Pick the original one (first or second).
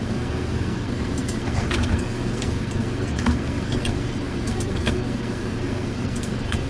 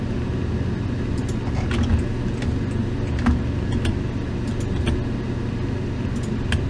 second